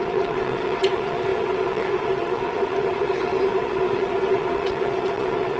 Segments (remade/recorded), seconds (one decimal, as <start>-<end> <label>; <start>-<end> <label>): 0.0-5.6 remade